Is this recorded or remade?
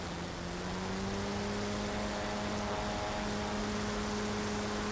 recorded